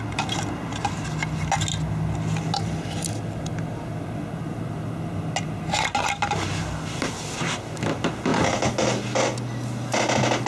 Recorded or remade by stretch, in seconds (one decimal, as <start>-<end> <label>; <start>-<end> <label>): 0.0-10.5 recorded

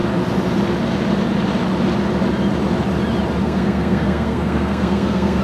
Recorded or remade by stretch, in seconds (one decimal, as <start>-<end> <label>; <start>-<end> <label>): 0.0-3.4 recorded; 3.4-5.4 remade

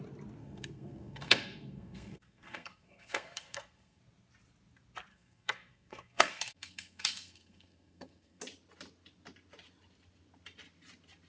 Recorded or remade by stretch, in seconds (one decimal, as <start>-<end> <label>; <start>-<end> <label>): 0.0-0.4 recorded; 0.4-4.0 remade; 4.0-5.1 recorded; 5.1-8.4 remade; 8.4-11.3 recorded

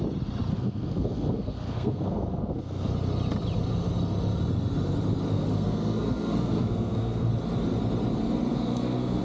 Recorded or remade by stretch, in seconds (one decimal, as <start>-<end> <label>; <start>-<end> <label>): 0.0-0.5 recorded; 0.5-2.9 remade; 2.9-5.3 recorded; 5.3-7.3 remade; 7.3-8.5 recorded; 8.5-9.2 remade

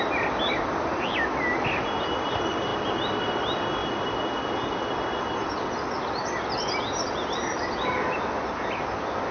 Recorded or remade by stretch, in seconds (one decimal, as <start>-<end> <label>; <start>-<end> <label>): 0.0-9.3 recorded